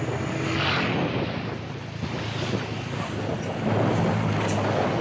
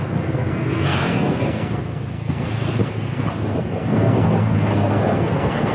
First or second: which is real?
first